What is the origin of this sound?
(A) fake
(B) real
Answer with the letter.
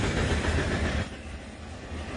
B